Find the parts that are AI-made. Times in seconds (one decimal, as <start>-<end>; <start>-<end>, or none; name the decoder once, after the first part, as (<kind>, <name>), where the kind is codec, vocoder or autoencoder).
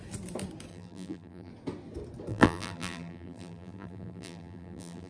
0.7-1.5 (vocoder, BigVGAN v2); 2.3-5.1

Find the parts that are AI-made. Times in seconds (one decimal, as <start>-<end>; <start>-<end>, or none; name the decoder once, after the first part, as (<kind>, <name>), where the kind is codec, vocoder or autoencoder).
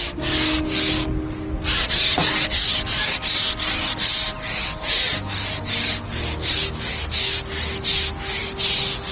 none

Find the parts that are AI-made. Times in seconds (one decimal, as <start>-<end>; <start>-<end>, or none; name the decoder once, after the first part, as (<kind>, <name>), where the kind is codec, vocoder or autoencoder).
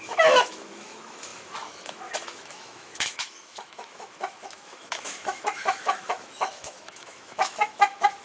0.0-8.2 (autoencoder, DAC-VAE)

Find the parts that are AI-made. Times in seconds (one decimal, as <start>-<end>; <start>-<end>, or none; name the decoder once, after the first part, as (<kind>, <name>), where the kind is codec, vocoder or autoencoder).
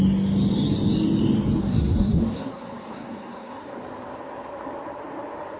1.6-3.7 (codec, SNAC)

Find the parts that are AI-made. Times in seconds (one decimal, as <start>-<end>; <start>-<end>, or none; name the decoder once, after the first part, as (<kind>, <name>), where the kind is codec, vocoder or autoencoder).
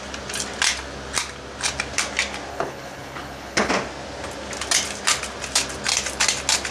2.5-3.7 (codec, HILCodec)